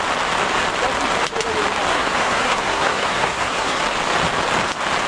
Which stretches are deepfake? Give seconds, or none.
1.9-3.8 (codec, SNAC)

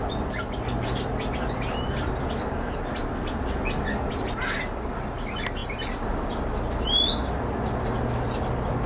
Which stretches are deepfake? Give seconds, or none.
none

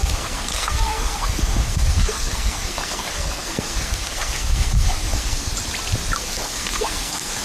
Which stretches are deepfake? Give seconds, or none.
0.0-5.5 (codec, SNAC); 6.2-7.4

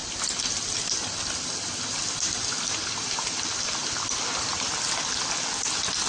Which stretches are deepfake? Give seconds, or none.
none

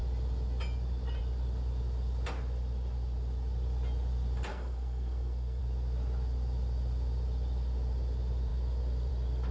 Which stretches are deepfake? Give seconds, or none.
4.5-5.6 (codec, SNAC)

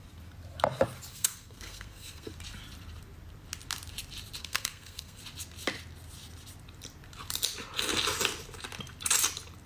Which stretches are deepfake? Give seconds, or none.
1.1-2.3 (codec, SNAC); 4.4-5.2